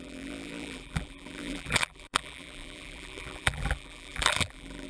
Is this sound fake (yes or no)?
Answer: yes